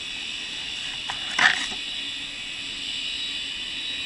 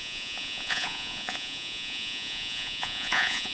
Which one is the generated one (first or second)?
second